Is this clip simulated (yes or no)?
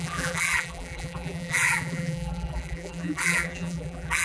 yes